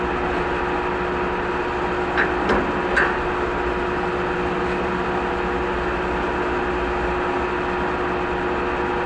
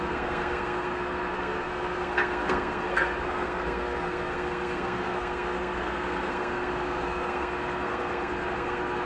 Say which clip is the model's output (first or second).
second